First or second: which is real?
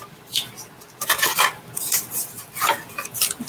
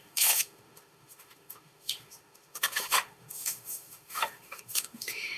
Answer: first